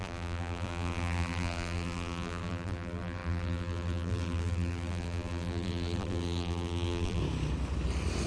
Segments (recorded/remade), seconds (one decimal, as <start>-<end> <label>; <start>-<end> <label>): 0.0-7.2 remade; 7.2-8.3 recorded